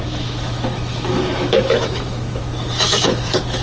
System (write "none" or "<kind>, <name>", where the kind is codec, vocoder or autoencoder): autoencoder, DAC-VAE